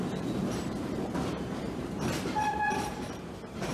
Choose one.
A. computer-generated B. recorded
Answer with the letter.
A